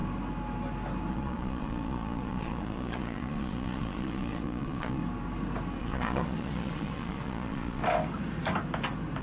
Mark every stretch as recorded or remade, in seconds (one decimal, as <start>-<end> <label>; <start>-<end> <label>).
0.0-1.1 recorded; 1.1-5.0 remade; 5.0-5.8 recorded; 5.8-7.8 remade; 7.8-9.2 recorded